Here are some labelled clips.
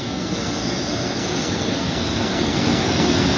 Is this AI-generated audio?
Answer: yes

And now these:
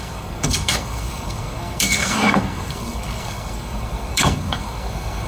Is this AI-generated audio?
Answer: yes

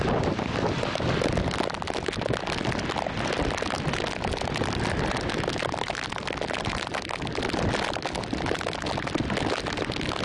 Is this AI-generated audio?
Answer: no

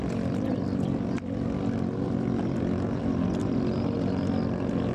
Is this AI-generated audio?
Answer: no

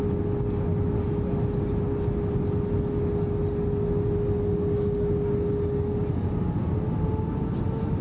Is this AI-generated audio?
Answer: no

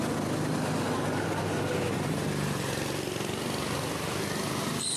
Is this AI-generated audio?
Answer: no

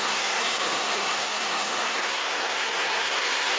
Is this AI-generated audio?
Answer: yes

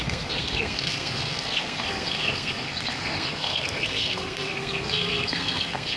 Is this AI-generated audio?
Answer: yes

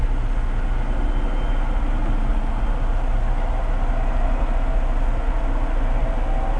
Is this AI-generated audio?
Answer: no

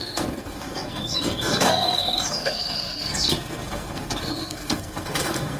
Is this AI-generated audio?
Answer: yes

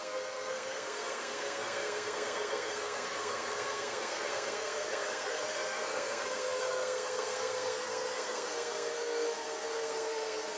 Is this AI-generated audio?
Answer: yes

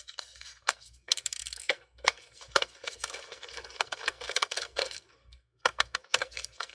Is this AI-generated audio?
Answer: yes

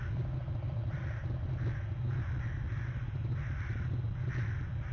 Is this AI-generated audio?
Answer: no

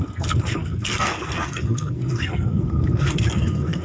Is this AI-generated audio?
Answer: yes